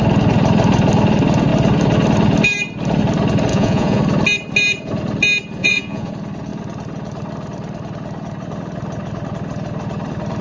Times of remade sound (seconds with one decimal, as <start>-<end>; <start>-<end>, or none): 3.5-4.0; 5.6-6.1

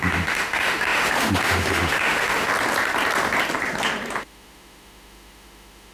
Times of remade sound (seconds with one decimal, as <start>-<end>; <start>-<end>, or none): 0.0-2.5; 4.2-5.9